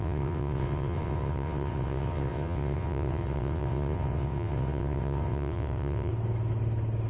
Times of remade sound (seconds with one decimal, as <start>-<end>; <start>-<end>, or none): 0.0-6.1